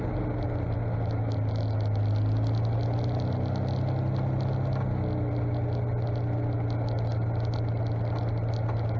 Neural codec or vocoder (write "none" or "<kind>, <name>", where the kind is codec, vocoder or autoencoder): none